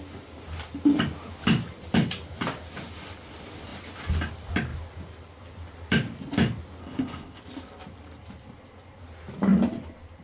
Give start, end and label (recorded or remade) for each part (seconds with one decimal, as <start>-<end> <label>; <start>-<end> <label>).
0.0-6.8 recorded; 6.8-7.4 remade; 7.4-10.2 recorded